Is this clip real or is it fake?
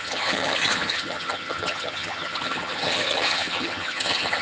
fake